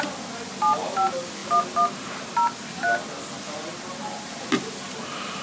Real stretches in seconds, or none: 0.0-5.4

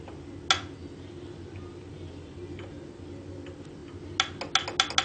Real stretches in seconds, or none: 0.0-5.0

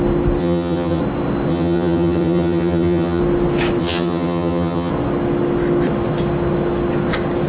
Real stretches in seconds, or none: 0.0-0.4; 1.0-1.5; 3.2-3.8; 4.9-7.5

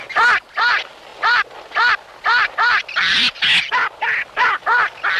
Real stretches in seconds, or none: 0.0-5.2

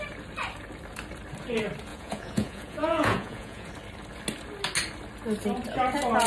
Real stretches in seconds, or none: 0.0-1.9; 3.7-6.3